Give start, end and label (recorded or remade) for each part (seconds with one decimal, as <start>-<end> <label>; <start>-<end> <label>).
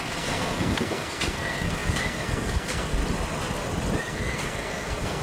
0.0-3.0 remade; 3.0-4.0 recorded; 4.0-5.2 remade